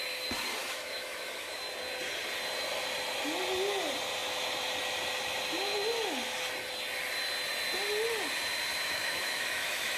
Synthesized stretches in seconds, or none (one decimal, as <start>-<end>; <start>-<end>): 0.6-1.6; 8.7-10.0